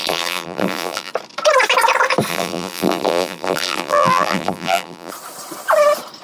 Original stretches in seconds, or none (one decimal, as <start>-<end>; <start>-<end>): 1.1-2.3; 5.1-6.2